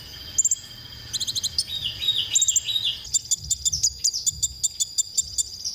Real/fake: real